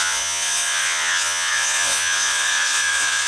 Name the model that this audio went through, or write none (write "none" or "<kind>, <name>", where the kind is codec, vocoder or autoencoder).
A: vocoder, Vocos